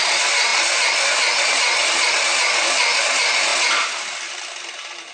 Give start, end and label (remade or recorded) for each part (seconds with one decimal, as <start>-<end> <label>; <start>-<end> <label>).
0.0-5.1 remade